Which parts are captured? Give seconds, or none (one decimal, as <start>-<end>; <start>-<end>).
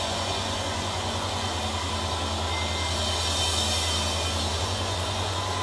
1.5-4.6